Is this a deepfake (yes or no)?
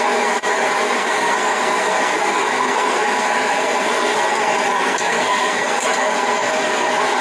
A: yes